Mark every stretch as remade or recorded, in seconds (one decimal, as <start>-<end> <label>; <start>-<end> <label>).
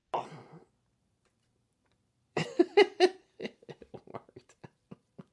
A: 0.0-1.0 recorded; 1.0-5.3 remade